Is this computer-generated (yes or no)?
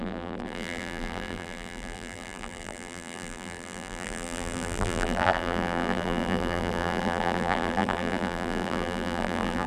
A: yes